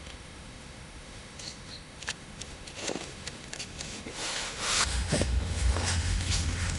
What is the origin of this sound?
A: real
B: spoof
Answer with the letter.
B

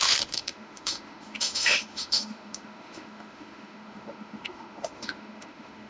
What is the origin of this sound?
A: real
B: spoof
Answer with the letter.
B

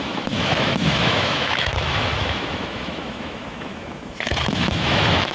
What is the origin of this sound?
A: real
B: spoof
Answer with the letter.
B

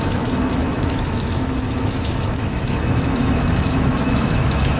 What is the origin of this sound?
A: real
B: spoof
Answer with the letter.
B